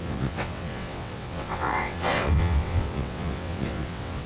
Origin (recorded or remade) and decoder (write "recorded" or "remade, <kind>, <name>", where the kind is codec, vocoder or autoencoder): remade, vocoder, WaveNeXt